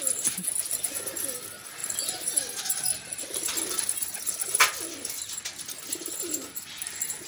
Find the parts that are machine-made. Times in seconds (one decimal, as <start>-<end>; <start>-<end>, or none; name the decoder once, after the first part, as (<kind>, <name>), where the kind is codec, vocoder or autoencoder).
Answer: none